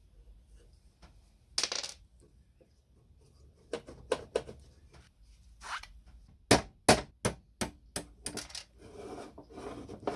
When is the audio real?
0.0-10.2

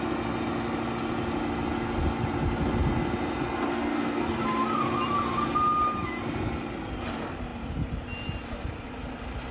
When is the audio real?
0.0-3.7; 4.2-9.5

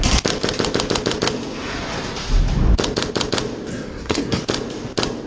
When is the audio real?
0.0-3.7; 4.4-5.3

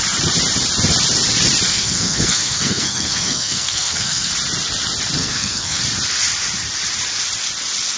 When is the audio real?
0.0-1.7; 4.3-5.2; 5.8-8.0

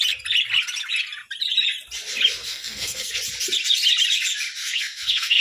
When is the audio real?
0.0-2.4; 3.2-4.6

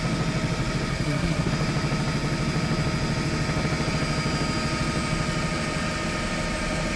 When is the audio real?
0.0-0.9; 1.5-7.0

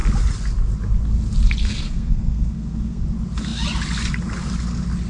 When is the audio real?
0.0-1.6; 3.0-5.1